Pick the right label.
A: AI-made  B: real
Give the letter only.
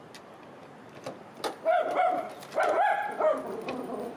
B